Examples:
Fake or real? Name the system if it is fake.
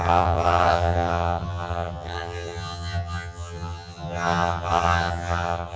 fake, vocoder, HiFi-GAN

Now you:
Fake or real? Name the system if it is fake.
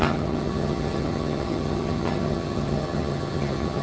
fake, vocoder, HiFi-GAN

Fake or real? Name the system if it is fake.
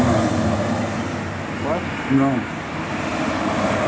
real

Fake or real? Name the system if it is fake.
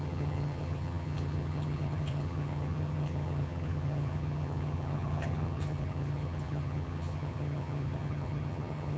fake, vocoder, HiFi-GAN